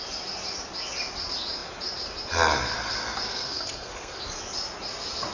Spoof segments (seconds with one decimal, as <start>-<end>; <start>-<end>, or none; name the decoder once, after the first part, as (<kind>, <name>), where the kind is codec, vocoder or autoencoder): 3.3-4.2 (codec, SNAC)